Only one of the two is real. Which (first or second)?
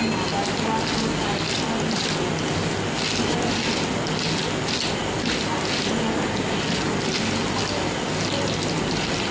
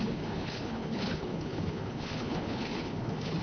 first